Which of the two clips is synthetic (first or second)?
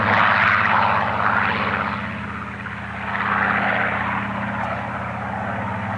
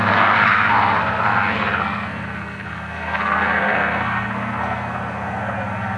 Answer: second